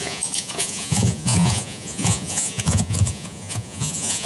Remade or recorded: remade